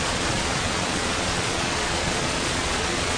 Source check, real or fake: fake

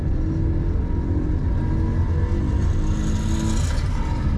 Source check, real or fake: real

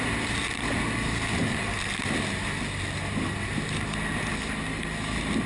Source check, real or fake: real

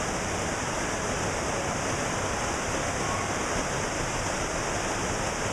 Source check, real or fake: real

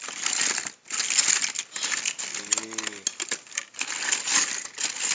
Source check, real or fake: real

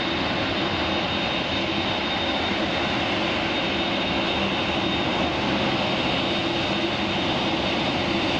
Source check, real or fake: real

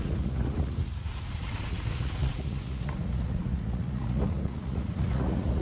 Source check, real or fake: fake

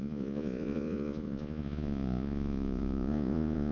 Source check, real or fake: fake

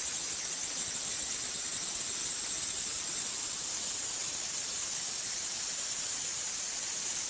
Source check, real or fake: real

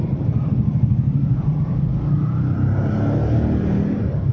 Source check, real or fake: real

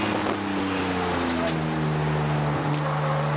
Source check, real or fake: real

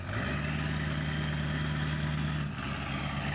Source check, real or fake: real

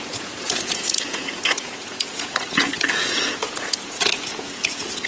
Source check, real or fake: fake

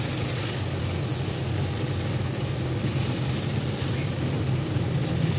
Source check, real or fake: real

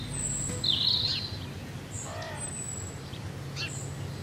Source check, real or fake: real